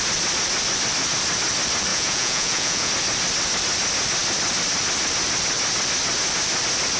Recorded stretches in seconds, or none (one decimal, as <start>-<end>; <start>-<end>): 0.0-1.9; 2.9-7.0